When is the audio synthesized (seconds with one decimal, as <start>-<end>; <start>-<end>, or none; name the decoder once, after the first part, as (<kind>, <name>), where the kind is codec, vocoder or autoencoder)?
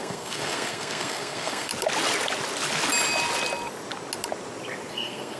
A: 0.0-1.7 (codec, SNAC); 4.9-5.4